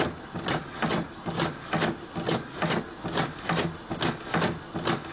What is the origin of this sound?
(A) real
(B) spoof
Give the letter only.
A